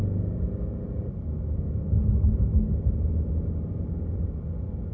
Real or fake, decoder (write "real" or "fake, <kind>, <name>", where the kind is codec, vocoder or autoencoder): real